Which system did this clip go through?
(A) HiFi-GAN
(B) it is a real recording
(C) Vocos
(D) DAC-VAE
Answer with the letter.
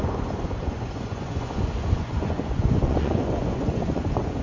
C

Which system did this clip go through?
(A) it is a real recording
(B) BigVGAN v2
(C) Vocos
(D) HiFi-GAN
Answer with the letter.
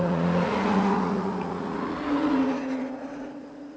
C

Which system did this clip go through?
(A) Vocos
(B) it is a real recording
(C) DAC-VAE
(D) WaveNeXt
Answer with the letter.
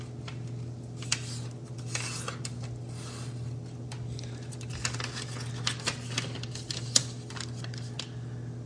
B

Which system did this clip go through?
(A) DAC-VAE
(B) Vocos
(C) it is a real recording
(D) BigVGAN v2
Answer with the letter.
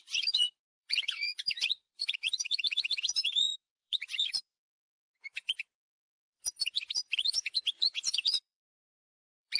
B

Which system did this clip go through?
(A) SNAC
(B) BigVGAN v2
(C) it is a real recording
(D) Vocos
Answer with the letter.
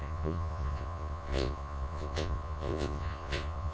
D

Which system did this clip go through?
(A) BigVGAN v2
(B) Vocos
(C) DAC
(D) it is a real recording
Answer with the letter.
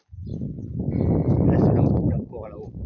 D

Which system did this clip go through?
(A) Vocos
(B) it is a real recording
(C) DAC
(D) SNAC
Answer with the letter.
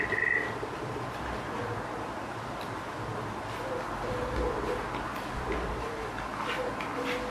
B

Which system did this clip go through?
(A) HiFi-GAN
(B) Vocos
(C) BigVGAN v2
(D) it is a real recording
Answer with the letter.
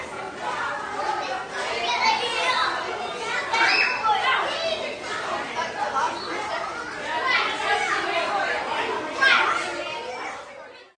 D